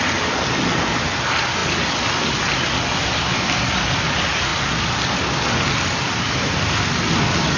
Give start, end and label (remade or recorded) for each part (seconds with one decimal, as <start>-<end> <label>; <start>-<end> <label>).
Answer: 0.0-7.6 recorded